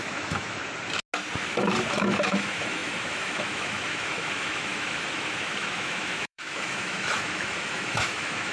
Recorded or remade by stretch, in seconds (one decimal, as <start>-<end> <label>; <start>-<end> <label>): 0.0-0.6 remade; 0.6-1.9 recorded; 1.9-8.5 remade